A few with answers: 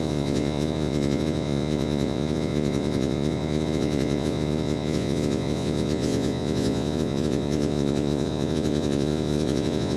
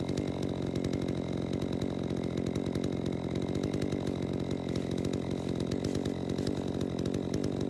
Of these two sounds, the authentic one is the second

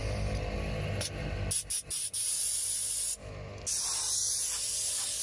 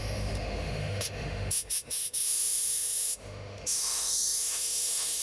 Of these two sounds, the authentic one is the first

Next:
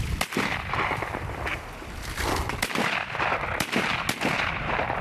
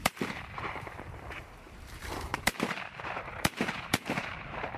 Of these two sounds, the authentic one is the first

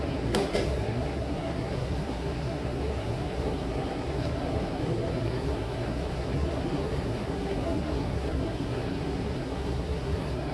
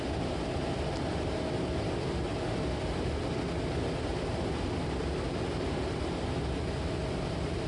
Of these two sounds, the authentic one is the second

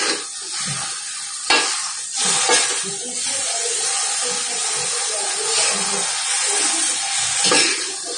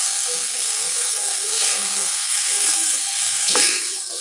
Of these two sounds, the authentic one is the first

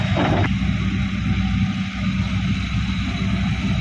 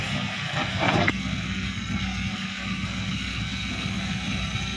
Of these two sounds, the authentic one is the first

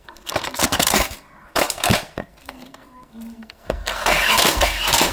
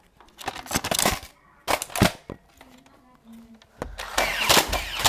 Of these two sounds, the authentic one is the second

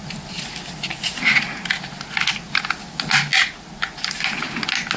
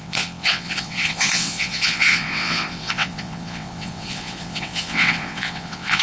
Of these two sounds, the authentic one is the first